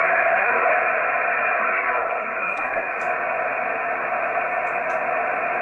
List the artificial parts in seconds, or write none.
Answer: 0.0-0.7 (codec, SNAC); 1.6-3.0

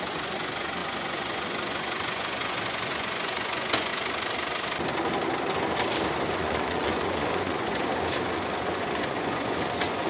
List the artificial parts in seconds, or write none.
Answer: 0.0-3.9 (vocoder, Vocos); 6.3-10.1

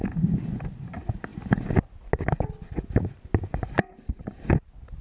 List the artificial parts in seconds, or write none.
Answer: none

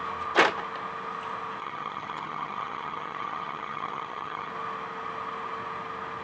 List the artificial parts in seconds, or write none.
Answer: 1.6-4.5 (vocoder, HiFi-GAN)

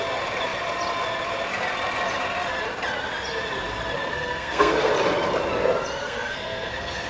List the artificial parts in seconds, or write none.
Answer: 4.1-4.9 (codec, SNAC); 6.0-7.1

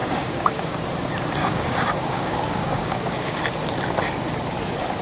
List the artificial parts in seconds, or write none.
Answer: 0.0-0.8 (codec, DAC); 1.4-3.4